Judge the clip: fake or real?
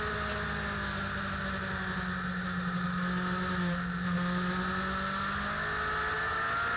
real